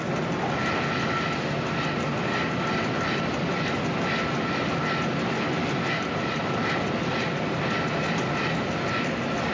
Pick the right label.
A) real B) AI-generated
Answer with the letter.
A